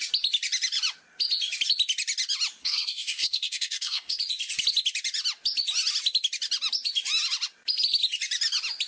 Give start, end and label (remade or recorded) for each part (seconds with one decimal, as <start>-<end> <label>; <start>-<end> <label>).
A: 0.0-2.6 recorded; 2.6-4.2 remade; 4.2-8.9 recorded